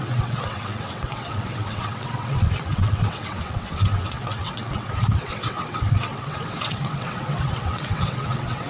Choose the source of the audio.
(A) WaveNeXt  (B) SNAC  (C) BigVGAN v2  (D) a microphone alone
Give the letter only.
A